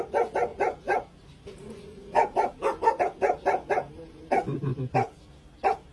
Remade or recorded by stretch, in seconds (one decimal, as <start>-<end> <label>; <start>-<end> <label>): 0.0-5.9 recorded